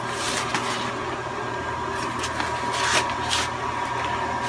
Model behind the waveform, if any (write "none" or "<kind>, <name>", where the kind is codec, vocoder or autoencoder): none